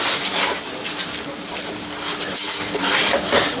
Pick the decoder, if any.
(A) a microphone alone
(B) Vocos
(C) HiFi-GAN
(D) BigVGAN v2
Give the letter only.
A